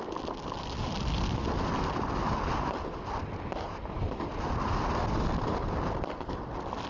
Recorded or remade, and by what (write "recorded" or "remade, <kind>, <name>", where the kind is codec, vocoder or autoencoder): recorded